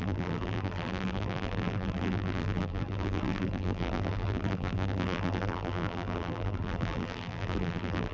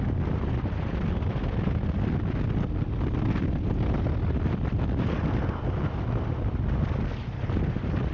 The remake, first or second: first